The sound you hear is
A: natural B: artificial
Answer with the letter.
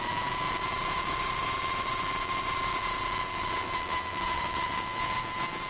B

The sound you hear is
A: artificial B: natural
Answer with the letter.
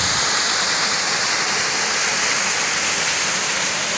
B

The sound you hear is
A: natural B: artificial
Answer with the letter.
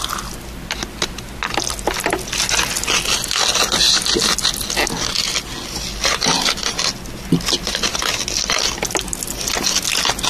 A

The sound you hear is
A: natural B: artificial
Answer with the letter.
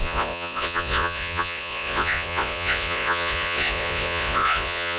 B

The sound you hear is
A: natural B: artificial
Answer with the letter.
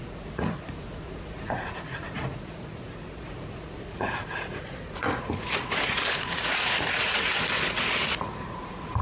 B